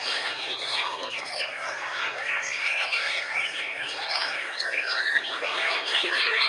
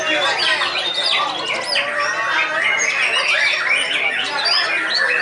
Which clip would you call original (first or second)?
second